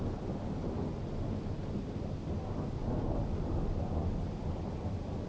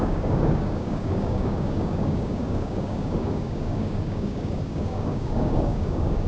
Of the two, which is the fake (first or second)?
second